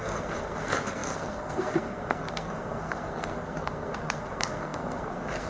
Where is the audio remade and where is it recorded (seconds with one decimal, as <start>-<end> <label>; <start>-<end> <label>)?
0.0-5.5 remade